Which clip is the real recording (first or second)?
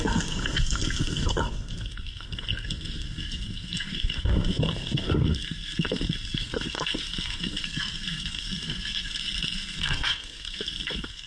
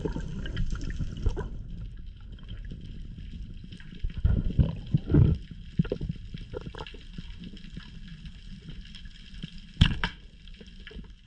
second